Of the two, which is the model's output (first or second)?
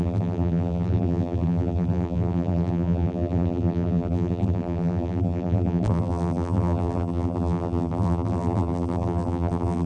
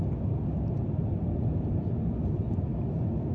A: first